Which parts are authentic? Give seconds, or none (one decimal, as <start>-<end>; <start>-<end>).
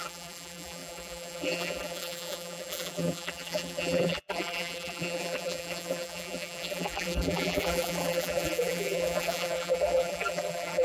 none